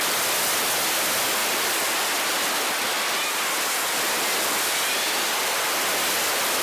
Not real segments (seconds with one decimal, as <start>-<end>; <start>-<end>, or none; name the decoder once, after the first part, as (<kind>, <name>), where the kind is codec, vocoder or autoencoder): none